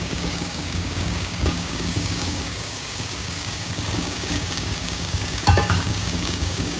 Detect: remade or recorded remade